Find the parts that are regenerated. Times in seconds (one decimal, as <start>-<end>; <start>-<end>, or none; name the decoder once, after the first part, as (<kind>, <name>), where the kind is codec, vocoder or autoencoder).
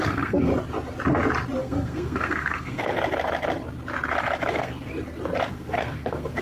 0.0-0.5 (codec, SNAC); 1.6-2.9; 4.5-4.9; 5.5-6.4